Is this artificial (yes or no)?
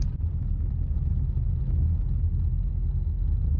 no